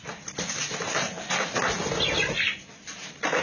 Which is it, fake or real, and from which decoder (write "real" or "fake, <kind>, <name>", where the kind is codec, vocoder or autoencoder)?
real